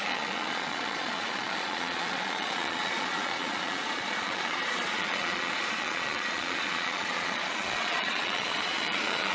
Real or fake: fake